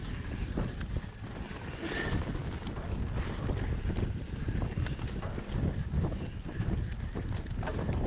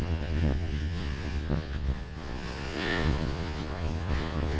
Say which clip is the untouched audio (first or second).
first